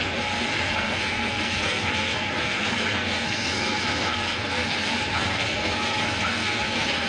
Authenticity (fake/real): fake